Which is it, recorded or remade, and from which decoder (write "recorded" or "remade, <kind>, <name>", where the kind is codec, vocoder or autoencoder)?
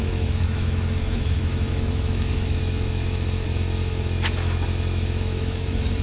remade, autoencoder, DAC-VAE